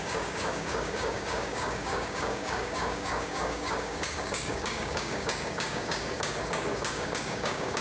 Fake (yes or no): yes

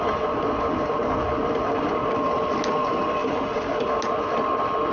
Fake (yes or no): no